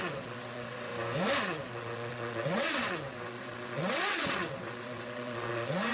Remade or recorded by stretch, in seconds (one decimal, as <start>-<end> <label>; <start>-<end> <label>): 0.0-0.9 remade; 0.9-1.4 recorded; 1.4-5.9 remade